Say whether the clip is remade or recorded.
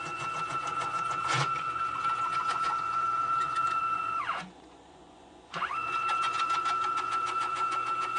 remade